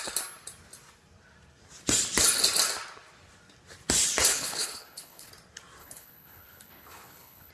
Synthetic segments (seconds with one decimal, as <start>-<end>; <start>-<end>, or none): 4.3-5.3; 5.8-7.5